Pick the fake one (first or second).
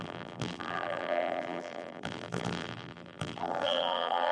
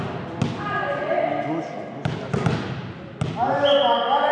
first